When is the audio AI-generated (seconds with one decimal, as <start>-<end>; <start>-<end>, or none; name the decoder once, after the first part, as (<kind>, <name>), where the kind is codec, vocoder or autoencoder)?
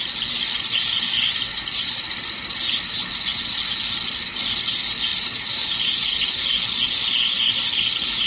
1.5-2.2 (vocoder, BigVGAN v2); 5.1-6.3